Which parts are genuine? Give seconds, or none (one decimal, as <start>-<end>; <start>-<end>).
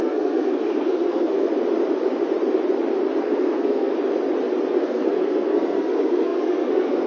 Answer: 1.5-3.2; 3.9-4.8